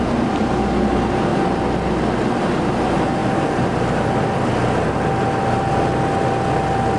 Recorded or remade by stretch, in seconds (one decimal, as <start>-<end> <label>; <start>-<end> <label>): 0.0-7.0 recorded